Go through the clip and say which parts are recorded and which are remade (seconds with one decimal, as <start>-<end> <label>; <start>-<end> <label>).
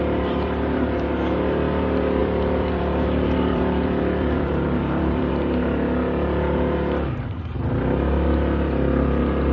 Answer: 0.0-2.2 recorded; 2.2-5.3 remade; 5.3-9.5 recorded